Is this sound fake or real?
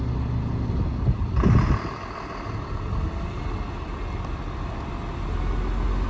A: real